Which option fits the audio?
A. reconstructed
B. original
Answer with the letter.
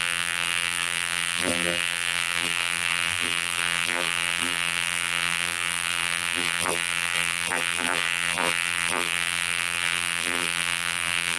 A